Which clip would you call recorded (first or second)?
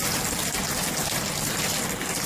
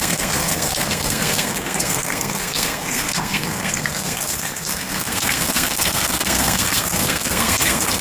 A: first